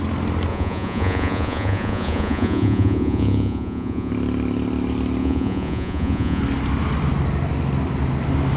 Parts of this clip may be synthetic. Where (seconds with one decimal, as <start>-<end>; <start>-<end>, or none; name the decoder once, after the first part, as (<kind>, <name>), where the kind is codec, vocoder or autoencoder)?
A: 0.5-4.1 (vocoder, Vocos); 5.2-6.4